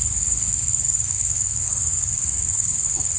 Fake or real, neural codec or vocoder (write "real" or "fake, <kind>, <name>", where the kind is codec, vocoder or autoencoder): fake, codec, DAC